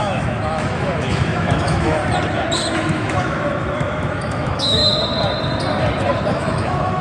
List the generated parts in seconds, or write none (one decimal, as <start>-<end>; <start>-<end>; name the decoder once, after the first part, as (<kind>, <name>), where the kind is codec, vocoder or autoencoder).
0.0-2.0 (autoencoder, DAC-VAE); 2.7-4.8; 6.3-7.0